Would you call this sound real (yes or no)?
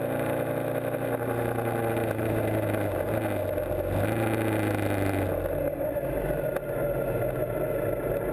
yes